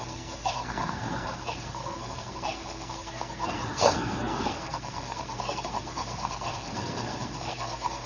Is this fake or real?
fake